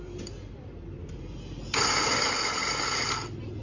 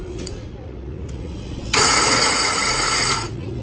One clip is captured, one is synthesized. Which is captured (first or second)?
first